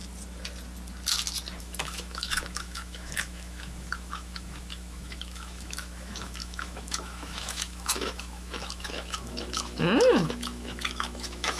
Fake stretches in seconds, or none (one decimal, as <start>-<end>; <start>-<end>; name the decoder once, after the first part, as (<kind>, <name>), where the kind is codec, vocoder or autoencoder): 1.6-11.6 (autoencoder, DAC-VAE)